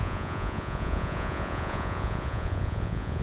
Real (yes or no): no